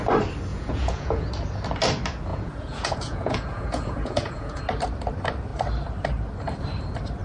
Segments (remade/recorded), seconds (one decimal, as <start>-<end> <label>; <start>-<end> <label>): 0.0-0.5 recorded; 0.5-1.3 remade; 1.3-2.3 recorded; 2.3-4.6 remade; 4.6-7.2 recorded